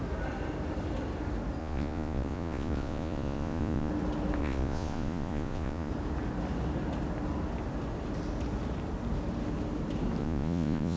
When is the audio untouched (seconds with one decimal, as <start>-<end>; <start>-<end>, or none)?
0.0-1.6; 3.9-4.4; 5.9-10.2